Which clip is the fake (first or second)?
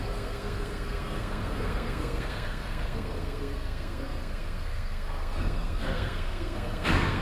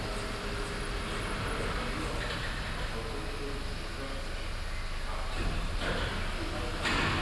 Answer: first